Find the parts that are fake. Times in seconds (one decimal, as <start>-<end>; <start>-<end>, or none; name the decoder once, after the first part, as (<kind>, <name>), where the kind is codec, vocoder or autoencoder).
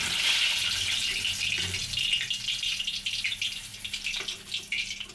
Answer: none